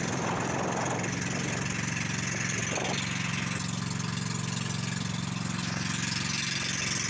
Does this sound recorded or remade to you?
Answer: recorded